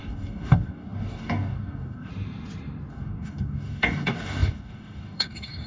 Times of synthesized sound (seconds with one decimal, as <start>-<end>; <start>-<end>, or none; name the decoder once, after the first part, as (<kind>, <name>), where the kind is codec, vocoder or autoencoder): 0.0-2.1 (codec, DAC); 2.9-5.7